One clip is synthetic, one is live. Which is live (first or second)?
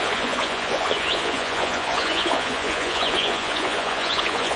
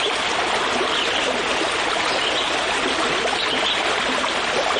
second